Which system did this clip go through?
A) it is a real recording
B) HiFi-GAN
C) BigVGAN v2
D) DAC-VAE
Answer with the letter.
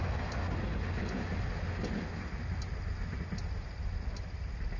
A